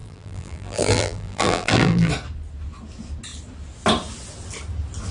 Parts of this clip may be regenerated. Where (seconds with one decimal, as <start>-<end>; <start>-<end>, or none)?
0.0-2.1